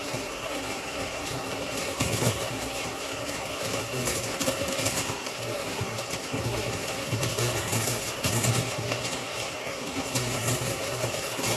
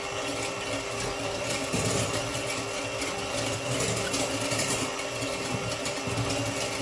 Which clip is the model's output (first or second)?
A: first